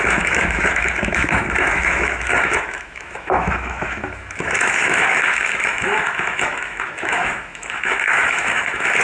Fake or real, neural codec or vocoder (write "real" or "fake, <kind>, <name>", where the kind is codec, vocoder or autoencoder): fake, autoencoder, DAC-VAE